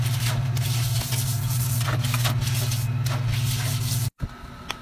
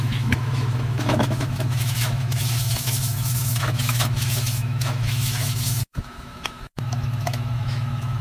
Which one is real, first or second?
first